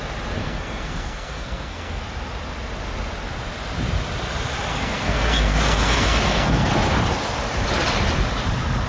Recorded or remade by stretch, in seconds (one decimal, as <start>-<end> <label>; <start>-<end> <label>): 0.0-0.4 recorded; 0.4-2.0 remade; 2.0-4.7 recorded; 4.7-6.7 remade; 6.7-8.9 recorded